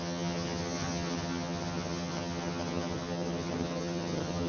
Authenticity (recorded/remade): remade